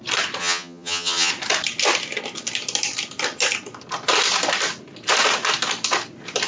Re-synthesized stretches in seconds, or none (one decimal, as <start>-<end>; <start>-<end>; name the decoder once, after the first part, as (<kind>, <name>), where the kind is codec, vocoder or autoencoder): 0.4-1.3 (vocoder, HiFi-GAN)